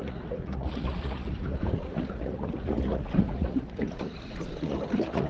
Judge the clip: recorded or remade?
remade